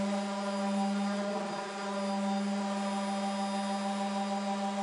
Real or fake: real